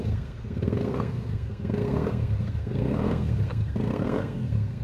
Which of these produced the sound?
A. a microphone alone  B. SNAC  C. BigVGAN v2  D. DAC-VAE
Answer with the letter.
B